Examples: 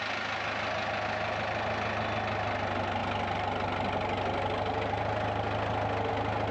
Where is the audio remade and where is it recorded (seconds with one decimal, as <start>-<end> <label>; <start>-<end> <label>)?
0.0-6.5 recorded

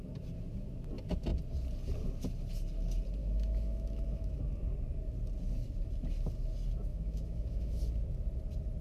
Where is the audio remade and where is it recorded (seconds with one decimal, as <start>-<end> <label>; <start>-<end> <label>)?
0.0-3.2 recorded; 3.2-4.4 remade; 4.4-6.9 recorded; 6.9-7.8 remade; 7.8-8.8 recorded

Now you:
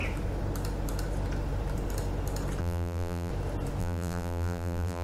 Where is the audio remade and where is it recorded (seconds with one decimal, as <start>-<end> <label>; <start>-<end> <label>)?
0.0-2.6 recorded; 2.6-3.3 remade; 3.3-3.8 recorded; 3.8-5.0 remade

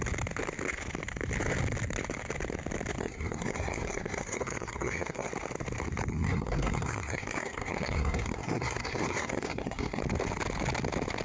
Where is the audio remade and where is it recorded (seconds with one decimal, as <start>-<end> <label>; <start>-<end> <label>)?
0.0-3.0 recorded; 3.0-5.3 remade; 5.3-6.1 recorded; 6.1-10.0 remade; 10.0-11.2 recorded

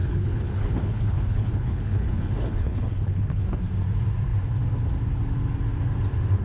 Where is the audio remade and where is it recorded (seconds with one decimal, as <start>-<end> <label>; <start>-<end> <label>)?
0.0-3.4 remade; 3.4-6.4 recorded

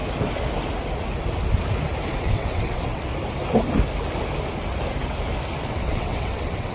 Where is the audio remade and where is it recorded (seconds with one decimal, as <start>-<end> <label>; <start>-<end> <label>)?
0.0-2.1 recorded; 2.1-3.1 remade; 3.1-5.7 recorded; 5.7-6.7 remade

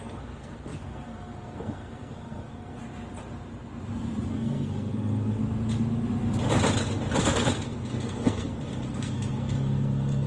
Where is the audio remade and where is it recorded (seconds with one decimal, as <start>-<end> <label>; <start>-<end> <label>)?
0.0-2.8 remade; 2.8-4.3 recorded; 4.3-5.4 remade; 5.4-7.2 recorded; 7.2-10.3 remade

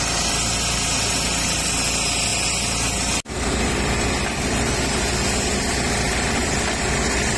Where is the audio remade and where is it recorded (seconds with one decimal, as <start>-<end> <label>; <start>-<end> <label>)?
0.0-7.4 recorded